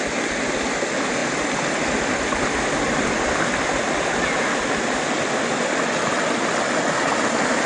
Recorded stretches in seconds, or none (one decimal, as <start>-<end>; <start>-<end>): 0.0-7.7